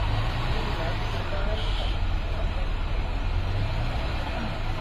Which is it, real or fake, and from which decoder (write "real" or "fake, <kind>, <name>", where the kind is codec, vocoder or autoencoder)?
fake, vocoder, BigVGAN v2